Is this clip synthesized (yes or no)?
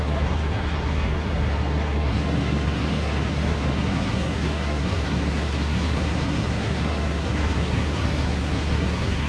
yes